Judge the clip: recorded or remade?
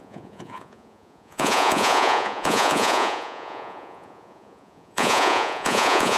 remade